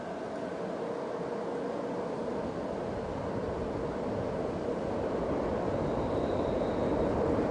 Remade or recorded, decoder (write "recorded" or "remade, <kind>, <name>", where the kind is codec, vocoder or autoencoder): recorded